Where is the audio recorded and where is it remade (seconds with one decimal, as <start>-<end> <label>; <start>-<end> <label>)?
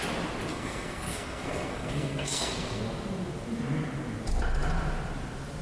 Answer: 0.0-0.5 recorded; 0.5-2.8 remade; 2.8-5.6 recorded